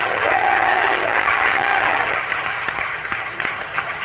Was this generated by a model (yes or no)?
yes